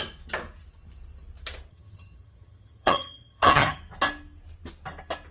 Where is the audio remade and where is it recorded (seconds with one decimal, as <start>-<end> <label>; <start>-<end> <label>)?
0.0-1.7 recorded; 1.7-3.8 remade; 3.8-5.3 recorded